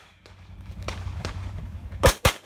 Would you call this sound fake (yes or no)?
yes